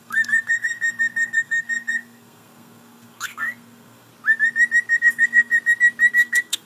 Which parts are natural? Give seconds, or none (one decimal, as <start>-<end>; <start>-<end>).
4.1-5.0; 5.5-6.1